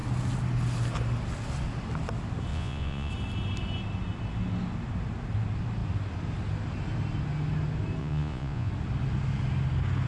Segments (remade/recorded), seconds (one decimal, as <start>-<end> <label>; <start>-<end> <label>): 0.0-2.5 recorded; 2.5-3.1 remade; 3.1-8.0 recorded; 8.0-8.7 remade; 8.7-10.1 recorded

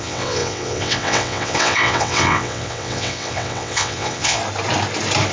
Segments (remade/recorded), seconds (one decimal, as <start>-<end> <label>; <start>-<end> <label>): 0.0-4.4 remade; 4.4-5.3 recorded

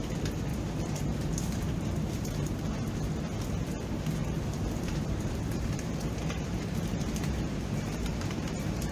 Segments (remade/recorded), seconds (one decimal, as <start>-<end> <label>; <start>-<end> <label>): 0.0-0.5 recorded; 0.5-2.5 remade; 2.5-4.2 recorded; 4.2-8.9 remade